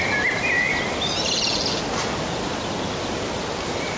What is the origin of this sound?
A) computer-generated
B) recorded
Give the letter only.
B